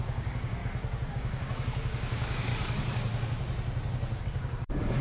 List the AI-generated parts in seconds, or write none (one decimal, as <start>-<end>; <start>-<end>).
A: 0.0-0.6; 1.1-2.5; 4.2-5.0